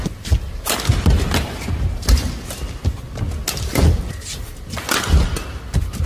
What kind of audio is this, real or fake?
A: real